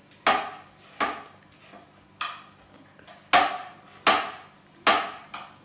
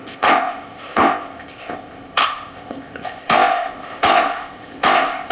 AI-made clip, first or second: second